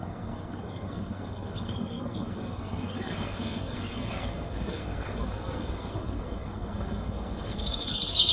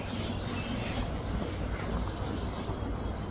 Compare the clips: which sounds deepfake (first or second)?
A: first